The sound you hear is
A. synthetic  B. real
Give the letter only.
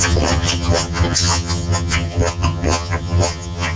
A